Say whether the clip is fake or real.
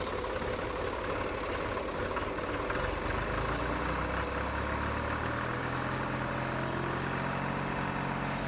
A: real